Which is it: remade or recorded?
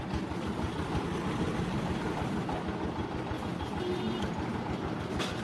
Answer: recorded